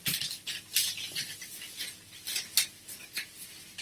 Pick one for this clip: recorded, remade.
recorded